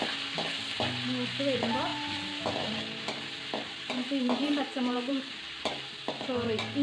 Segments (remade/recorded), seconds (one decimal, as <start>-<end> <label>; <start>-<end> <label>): 0.0-1.9 recorded; 1.9-6.0 remade; 6.0-6.8 recorded